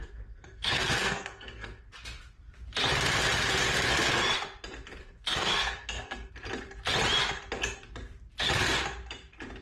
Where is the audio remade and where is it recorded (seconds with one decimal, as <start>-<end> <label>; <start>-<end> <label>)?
0.0-1.9 remade; 1.9-5.0 recorded; 5.0-6.3 remade; 6.3-9.6 recorded